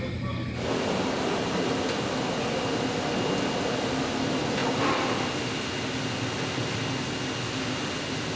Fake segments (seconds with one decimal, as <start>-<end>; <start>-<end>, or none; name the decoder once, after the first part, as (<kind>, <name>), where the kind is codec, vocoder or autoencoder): none